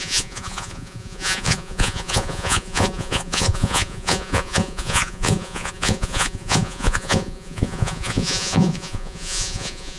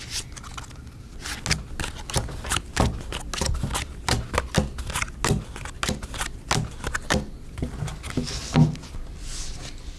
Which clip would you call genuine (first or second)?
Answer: second